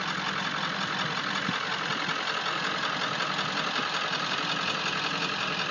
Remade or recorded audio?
recorded